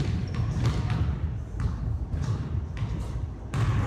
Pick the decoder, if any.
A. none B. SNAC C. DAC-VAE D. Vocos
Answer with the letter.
A